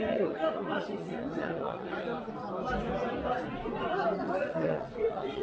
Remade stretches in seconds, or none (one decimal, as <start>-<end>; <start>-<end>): 0.0-2.1; 4.2-5.4